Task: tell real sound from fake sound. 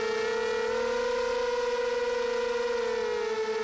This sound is real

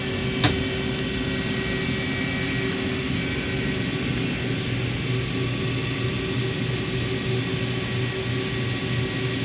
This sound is real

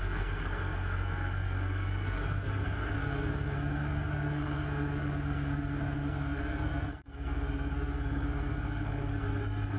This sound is fake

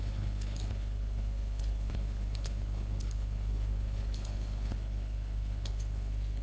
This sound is fake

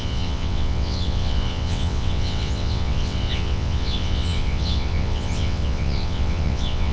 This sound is fake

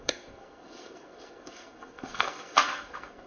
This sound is fake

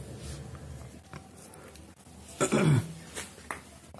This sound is real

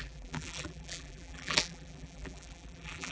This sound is fake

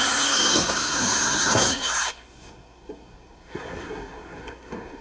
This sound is fake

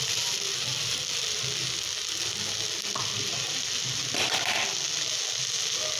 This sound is real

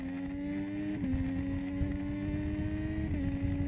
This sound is real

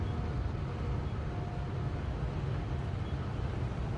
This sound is real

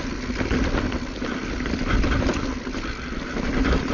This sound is real